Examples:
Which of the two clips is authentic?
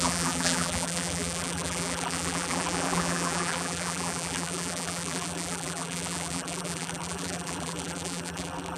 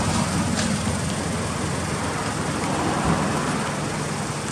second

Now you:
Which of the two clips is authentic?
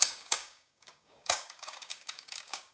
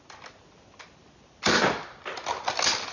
second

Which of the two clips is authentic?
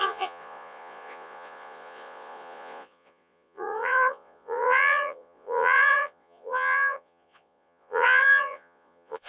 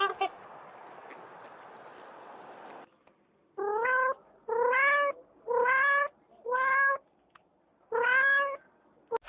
second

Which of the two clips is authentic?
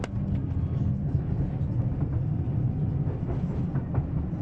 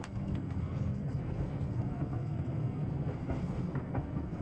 first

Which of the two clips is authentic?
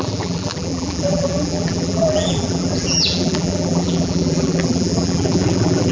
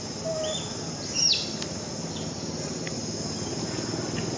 second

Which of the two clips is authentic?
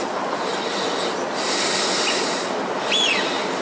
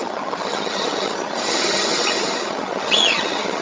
first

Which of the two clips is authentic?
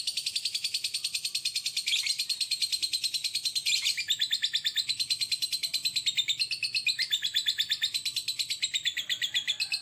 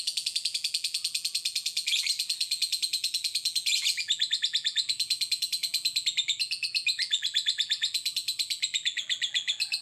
first